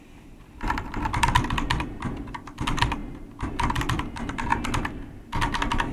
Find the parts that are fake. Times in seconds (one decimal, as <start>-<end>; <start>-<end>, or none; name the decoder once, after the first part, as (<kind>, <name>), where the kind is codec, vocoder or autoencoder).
none